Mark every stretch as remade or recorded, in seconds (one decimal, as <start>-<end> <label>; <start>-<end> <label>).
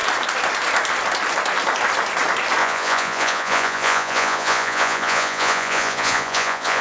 0.0-2.6 recorded; 2.6-6.8 remade